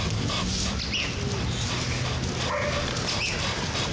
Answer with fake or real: real